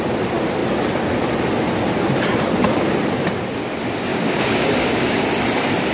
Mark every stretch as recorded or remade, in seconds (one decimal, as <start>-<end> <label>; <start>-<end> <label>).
0.0-4.1 recorded; 4.1-5.2 remade; 5.2-5.9 recorded